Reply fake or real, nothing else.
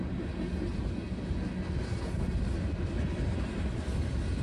real